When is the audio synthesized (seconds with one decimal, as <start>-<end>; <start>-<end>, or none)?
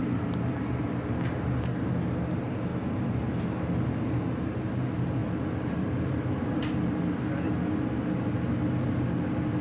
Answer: 5.2-6.6